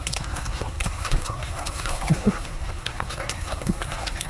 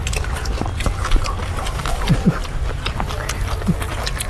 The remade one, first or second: first